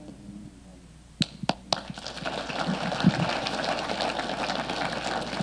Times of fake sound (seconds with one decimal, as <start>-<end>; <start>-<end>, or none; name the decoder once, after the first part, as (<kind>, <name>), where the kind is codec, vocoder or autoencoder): none